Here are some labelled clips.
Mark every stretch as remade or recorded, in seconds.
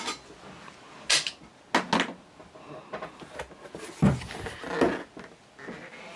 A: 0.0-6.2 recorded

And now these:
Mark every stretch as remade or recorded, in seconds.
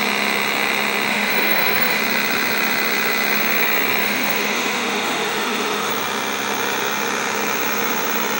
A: 0.0-1.1 recorded; 1.1-2.0 remade; 2.0-4.0 recorded; 4.0-5.9 remade; 5.9-8.4 recorded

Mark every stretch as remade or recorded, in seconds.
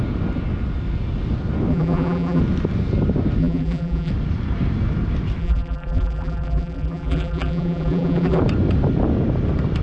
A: 0.0-1.7 recorded; 1.7-2.4 remade; 2.4-3.4 recorded; 3.4-4.1 remade; 4.1-5.4 recorded; 5.4-8.4 remade; 8.4-9.8 recorded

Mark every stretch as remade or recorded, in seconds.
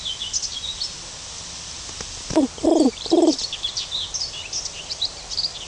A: 0.0-5.7 recorded